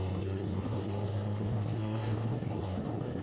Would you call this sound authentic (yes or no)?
no